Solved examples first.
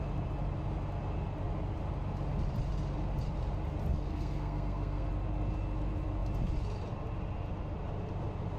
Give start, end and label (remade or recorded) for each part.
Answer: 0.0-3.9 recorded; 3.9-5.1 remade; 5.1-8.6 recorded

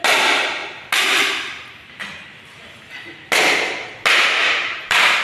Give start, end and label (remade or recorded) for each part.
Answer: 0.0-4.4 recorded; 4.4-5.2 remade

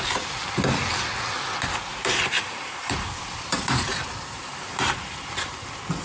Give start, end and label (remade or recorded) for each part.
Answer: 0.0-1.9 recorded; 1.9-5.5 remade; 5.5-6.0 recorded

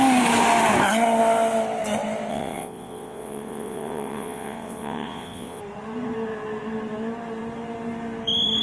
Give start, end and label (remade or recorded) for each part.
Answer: 0.0-2.3 recorded; 2.3-5.6 remade; 5.6-8.6 recorded

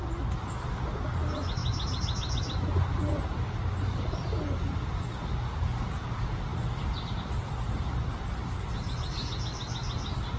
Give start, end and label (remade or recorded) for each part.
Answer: 0.0-10.4 recorded

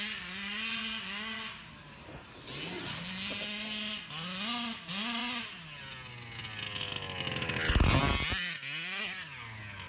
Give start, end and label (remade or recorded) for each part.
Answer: 0.0-9.9 recorded

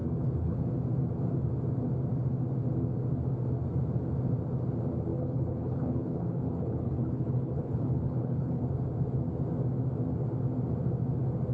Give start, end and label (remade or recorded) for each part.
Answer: 0.0-0.6 remade; 0.6-5.1 recorded; 5.1-8.7 remade; 8.7-11.5 recorded